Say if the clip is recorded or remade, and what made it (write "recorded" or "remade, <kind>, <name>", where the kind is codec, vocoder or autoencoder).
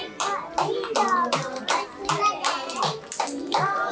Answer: recorded